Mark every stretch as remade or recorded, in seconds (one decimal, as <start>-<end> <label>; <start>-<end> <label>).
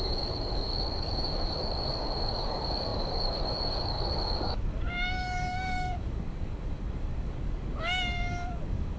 0.0-9.0 remade